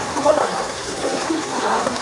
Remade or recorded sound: remade